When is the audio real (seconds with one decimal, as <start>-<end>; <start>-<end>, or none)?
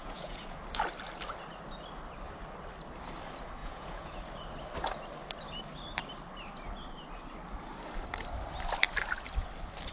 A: 0.6-3.6; 4.2-9.9